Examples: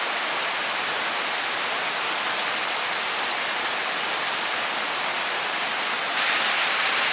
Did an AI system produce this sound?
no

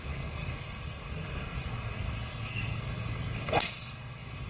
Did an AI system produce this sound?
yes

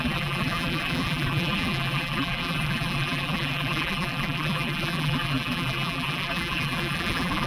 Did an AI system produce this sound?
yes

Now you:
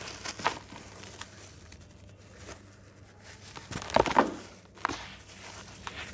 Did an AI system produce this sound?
no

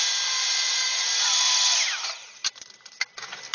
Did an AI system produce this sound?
no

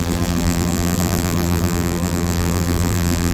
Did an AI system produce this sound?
yes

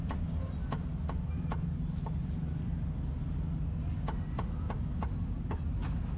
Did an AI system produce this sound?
no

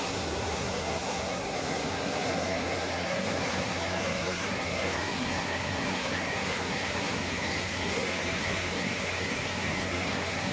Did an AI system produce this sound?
yes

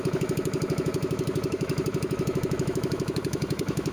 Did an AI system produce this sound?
yes